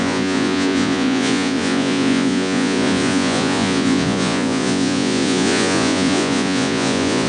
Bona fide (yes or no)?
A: no